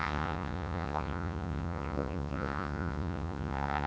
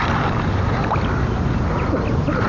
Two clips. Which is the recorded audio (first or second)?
second